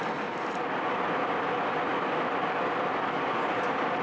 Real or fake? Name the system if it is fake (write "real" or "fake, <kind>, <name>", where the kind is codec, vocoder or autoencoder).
real